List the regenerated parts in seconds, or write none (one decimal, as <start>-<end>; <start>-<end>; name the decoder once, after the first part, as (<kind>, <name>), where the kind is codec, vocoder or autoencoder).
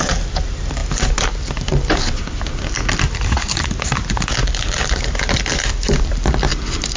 4.4-6.5 (vocoder, BigVGAN v2)